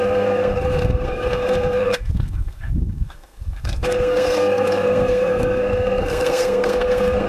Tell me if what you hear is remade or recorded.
remade